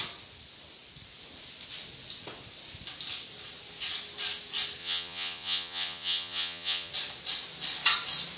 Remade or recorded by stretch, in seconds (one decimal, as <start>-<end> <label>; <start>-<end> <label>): 0.0-4.8 recorded; 4.8-6.9 remade; 6.9-8.4 recorded